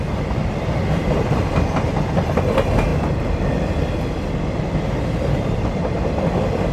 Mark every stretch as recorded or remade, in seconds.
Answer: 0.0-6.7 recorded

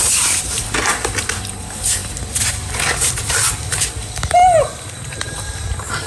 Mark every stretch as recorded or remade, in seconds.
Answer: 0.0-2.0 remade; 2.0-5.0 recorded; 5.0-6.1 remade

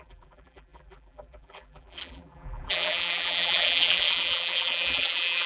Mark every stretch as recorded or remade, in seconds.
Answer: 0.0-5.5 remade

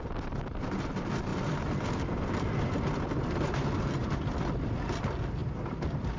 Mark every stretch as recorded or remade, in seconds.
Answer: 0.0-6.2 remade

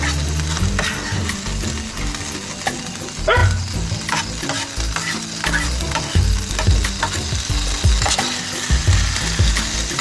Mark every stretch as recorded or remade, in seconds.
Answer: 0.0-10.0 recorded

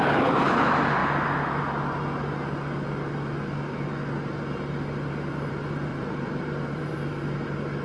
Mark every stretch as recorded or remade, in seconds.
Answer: 0.0-5.9 recorded; 5.9-6.9 remade; 6.9-7.8 recorded